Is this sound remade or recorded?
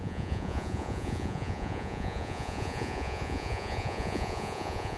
remade